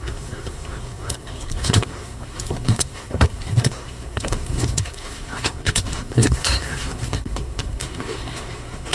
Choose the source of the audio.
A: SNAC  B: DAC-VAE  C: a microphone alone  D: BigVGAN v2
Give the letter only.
A